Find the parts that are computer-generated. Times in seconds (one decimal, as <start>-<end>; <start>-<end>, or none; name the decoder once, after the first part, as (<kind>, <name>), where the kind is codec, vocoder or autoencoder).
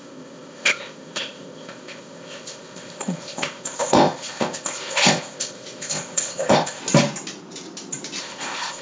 0.0-6.8 (codec, ZipCodec); 8.2-8.8